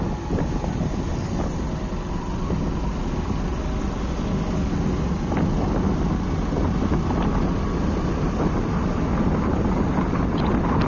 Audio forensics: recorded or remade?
recorded